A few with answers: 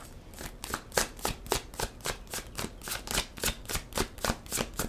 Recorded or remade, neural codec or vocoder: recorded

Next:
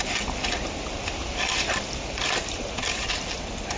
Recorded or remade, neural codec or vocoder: recorded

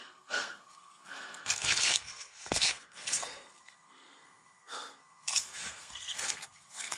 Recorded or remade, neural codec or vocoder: remade, codec, SNAC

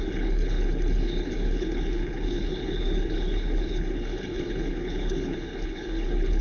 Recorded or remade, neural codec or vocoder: remade, codec, HILCodec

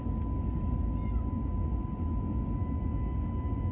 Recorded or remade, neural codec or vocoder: recorded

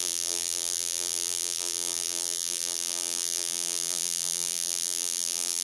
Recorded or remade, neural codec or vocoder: remade, vocoder, BigVGAN v2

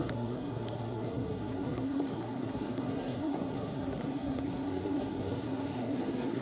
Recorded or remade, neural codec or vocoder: remade, codec, SNAC